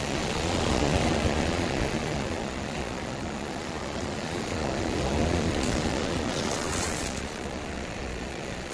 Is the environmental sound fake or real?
fake